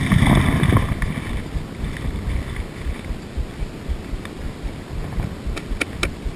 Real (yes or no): yes